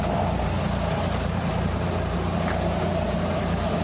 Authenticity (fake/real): real